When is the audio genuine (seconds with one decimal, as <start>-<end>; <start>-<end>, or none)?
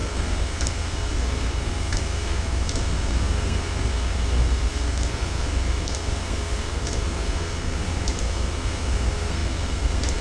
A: none